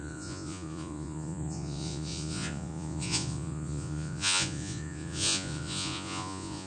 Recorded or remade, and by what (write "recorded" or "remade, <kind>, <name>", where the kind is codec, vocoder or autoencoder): remade, vocoder, Vocos